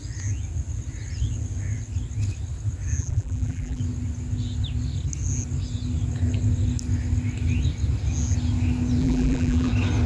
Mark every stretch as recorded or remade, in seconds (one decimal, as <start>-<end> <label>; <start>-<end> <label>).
0.0-3.0 recorded; 3.0-3.8 remade; 3.8-9.0 recorded; 9.0-9.7 remade; 9.7-10.1 recorded